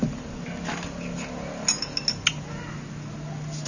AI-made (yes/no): no